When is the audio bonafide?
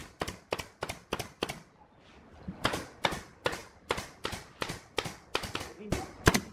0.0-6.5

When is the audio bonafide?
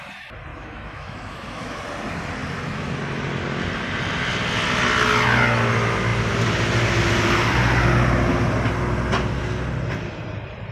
0.0-0.5; 1.8-10.7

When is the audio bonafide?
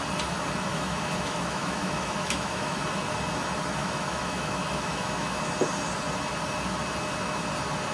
0.0-0.7; 2.8-3.8; 5.4-7.9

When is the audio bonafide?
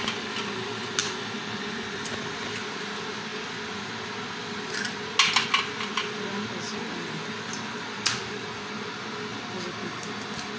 0.0-10.6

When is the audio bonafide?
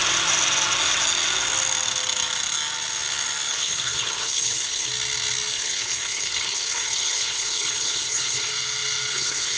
0.0-3.5; 4.9-5.5; 8.5-9.1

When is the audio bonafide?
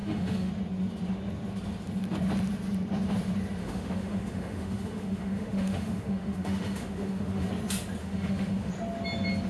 0.5-3.6; 7.5-8.0; 8.7-9.5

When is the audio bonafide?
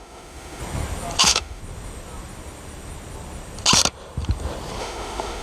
0.6-1.2; 1.6-4.8